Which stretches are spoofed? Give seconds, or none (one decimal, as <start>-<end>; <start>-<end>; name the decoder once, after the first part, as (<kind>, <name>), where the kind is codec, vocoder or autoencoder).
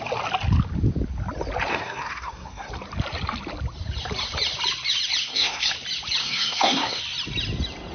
1.7-2.7 (codec, SNAC); 5.2-5.7; 6.2-7.0